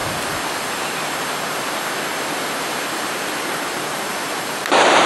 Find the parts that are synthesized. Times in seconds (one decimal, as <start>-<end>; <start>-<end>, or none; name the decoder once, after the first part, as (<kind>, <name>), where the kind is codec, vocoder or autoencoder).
3.1-4.1 (vocoder, BigVGAN v2); 4.6-5.1